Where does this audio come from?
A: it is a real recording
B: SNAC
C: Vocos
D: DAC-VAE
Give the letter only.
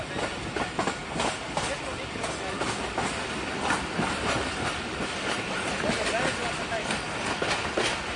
A